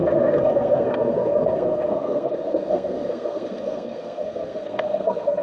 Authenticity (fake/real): fake